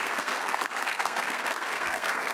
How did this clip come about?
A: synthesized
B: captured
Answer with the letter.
A